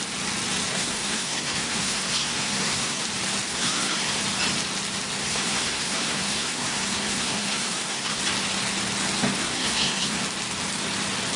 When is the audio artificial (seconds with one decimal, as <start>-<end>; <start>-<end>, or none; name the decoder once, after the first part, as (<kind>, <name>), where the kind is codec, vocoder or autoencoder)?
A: 0.7-3.0 (codec, SNAC); 3.5-4.2; 5.2-8.2; 9.4-10.2